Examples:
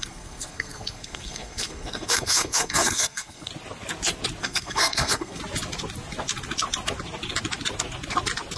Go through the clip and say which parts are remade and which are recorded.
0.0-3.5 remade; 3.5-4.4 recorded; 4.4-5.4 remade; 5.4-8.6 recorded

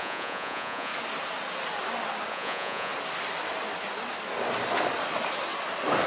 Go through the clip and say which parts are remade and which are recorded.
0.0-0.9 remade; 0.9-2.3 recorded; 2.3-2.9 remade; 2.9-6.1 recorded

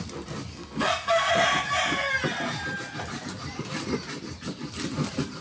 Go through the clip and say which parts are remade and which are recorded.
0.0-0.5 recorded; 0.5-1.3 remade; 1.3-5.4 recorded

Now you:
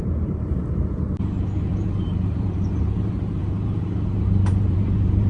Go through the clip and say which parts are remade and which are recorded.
0.0-0.6 remade; 0.6-1.7 recorded; 1.7-5.3 remade

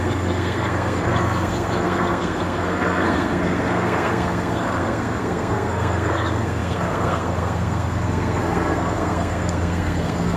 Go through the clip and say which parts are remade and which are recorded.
0.0-10.4 remade